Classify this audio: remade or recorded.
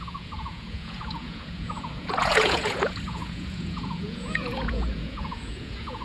remade